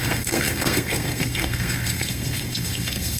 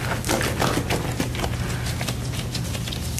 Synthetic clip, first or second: first